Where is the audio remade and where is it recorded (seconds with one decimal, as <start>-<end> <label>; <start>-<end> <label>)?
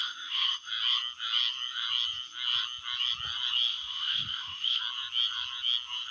0.0-0.7 remade; 0.7-3.7 recorded; 3.7-4.8 remade; 4.8-6.1 recorded